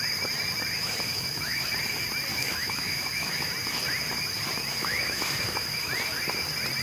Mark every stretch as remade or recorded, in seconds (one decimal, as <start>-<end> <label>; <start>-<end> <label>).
0.0-0.8 recorded; 0.8-1.6 remade; 1.6-2.3 recorded; 2.3-3.5 remade; 3.5-4.7 recorded; 4.7-5.9 remade; 5.9-6.8 recorded